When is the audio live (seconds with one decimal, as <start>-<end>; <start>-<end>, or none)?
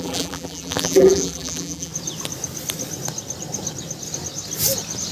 1.9-5.1